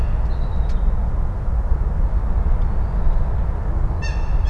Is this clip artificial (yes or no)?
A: no